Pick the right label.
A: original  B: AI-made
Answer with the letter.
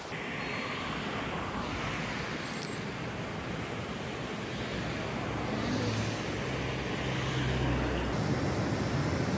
A